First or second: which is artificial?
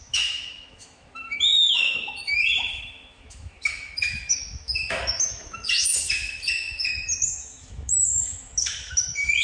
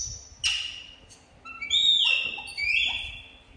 first